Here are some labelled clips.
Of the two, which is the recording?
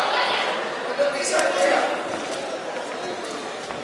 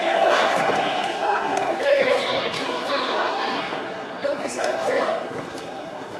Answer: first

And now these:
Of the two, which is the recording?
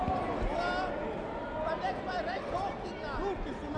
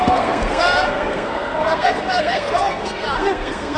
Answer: first